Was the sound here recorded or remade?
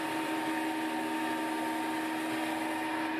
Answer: recorded